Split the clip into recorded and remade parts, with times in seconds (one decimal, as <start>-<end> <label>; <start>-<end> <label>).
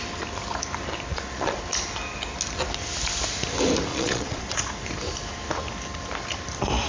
0.0-1.1 recorded; 1.1-1.6 remade; 1.6-3.9 recorded; 3.9-4.7 remade; 4.7-6.9 recorded